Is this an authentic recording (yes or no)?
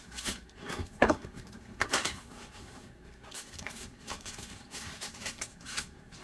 no